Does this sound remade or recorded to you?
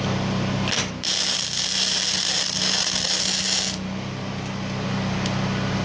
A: recorded